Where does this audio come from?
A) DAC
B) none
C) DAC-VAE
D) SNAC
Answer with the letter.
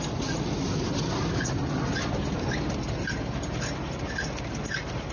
B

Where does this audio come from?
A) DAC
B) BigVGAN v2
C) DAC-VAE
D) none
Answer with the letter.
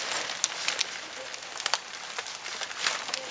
D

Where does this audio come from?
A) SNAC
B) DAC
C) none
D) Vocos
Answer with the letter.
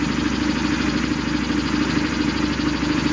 C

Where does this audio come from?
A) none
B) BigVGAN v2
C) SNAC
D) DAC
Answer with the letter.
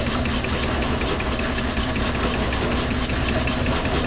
A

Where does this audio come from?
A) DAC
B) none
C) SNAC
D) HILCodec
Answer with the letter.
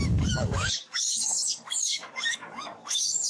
A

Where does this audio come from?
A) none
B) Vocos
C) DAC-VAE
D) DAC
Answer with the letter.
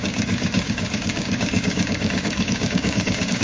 D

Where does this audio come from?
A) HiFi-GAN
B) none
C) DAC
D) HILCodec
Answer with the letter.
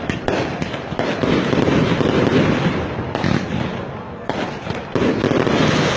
B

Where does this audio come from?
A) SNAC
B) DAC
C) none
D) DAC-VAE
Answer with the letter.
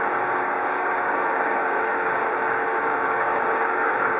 B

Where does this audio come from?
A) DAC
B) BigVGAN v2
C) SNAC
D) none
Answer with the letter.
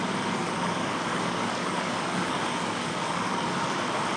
A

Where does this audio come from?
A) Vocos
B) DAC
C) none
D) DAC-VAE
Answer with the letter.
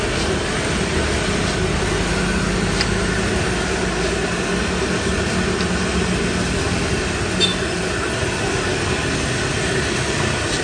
C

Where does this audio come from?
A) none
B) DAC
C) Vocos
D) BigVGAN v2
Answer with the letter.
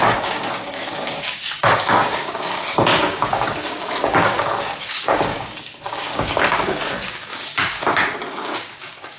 B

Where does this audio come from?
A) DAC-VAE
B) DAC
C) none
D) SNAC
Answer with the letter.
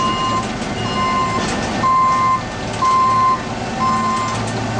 C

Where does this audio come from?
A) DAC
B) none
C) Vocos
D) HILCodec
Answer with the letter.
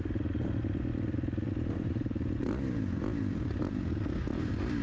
B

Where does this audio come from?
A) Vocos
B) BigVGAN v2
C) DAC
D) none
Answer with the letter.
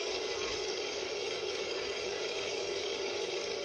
C